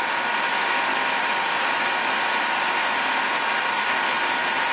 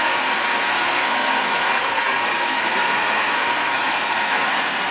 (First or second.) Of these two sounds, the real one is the first